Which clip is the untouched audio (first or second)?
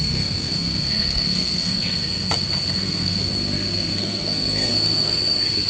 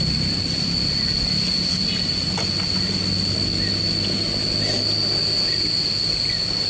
second